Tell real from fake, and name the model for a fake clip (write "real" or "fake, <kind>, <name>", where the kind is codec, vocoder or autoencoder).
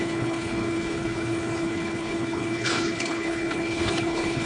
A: fake, codec, HILCodec